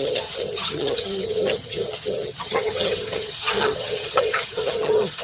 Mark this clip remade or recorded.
remade